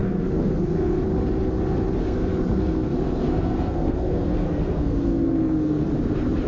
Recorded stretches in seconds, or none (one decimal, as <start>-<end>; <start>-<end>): 1.0-2.0; 5.9-6.5